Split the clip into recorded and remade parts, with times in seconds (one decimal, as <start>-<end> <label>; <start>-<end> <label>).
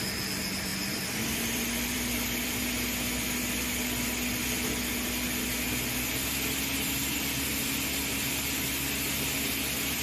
0.0-0.7 recorded; 0.7-2.6 remade; 2.6-10.0 recorded